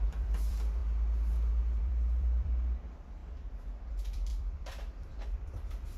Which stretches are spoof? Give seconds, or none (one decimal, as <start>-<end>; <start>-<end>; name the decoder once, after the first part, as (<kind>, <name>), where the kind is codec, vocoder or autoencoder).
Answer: 0.0-0.8 (vocoder, BigVGAN v2); 1.8-6.0